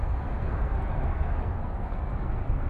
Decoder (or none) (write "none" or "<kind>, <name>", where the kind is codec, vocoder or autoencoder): codec, SNAC